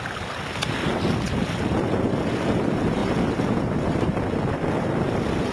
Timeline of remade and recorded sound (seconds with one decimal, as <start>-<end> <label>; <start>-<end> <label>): 0.0-3.0 recorded; 3.0-4.2 remade; 4.2-5.5 recorded